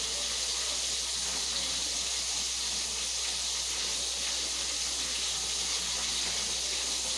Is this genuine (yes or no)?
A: yes